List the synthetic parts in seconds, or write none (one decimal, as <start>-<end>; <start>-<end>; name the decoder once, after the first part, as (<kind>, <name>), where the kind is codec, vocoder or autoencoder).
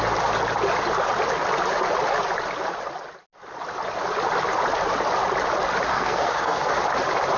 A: 5.9-6.8 (codec, SNAC)